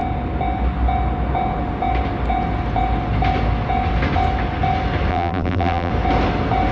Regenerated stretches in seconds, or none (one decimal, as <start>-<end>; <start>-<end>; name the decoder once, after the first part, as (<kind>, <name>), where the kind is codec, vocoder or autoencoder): 5.1-5.9 (vocoder, BigVGAN v2)